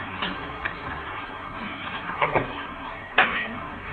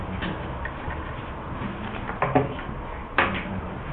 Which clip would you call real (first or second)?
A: second